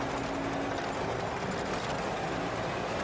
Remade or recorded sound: recorded